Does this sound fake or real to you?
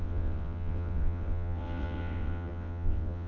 fake